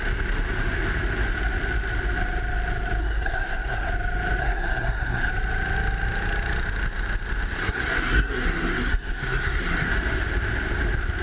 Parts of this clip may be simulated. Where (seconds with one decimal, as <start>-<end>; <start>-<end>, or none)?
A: 3.0-3.9; 4.4-5.3; 7.6-9.9